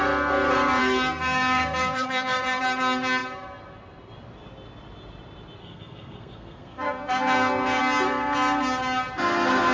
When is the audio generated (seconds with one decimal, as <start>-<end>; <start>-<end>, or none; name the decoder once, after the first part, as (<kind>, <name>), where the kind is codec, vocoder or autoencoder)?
0.8-2.6 (codec, SNAC); 5.6-7.8